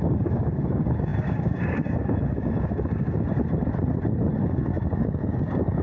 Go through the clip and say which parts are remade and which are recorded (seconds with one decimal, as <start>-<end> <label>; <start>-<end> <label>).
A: 0.0-3.3 remade; 3.3-4.4 recorded; 4.4-5.8 remade